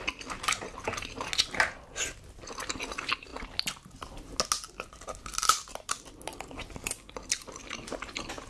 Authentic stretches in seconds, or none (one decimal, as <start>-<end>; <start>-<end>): 0.0-8.5